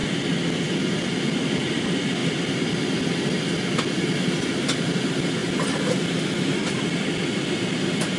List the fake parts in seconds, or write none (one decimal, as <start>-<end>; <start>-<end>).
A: 0.8-2.2; 4.8-5.4; 7.7-8.2

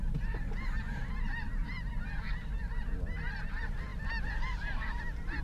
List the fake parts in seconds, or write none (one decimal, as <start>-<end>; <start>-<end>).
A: none

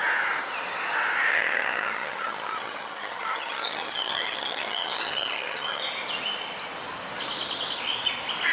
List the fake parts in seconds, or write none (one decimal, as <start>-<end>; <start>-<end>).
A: 1.3-5.8

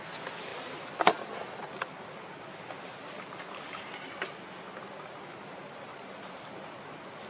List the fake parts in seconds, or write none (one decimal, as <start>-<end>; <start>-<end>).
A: none

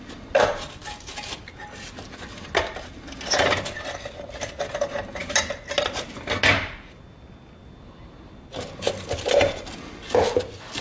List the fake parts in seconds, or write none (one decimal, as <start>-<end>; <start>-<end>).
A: none

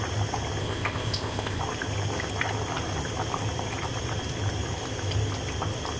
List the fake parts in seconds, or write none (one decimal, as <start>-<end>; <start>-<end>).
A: 0.6-1.6

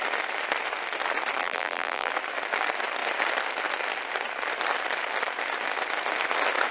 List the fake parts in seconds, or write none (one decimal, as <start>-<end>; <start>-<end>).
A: 1.4-2.1

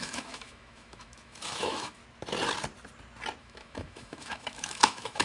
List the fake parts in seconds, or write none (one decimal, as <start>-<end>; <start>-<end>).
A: 0.0-2.0; 3.4-5.2